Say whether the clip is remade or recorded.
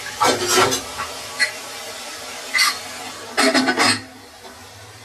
remade